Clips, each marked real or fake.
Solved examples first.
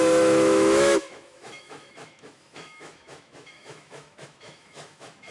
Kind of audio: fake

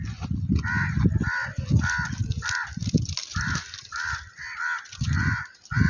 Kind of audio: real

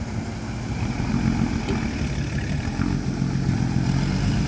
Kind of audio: real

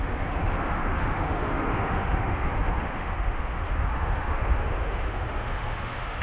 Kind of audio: fake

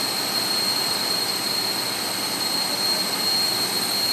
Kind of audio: real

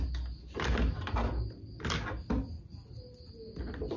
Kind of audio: real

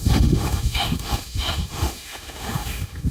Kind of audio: fake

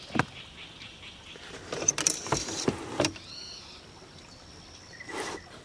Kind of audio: real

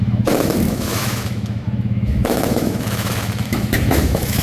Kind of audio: fake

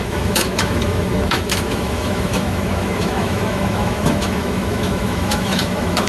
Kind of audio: fake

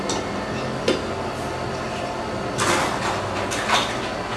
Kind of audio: real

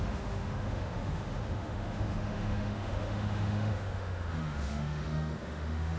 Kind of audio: fake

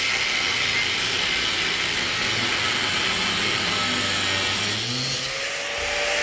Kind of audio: real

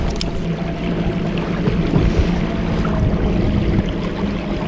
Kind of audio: real